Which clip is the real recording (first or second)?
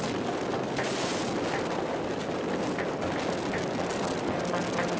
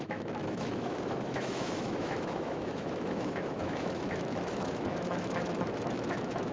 first